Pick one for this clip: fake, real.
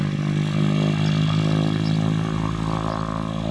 real